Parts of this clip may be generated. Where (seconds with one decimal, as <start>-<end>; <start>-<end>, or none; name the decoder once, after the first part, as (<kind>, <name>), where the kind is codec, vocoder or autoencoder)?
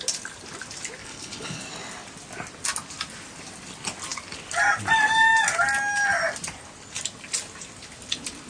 1.0-1.6 (codec, HILCodec)